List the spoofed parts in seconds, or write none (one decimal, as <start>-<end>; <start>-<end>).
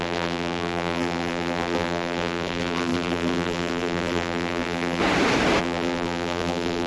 0.0-5.0; 5.6-6.9